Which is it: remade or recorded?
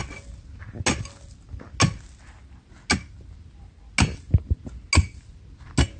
recorded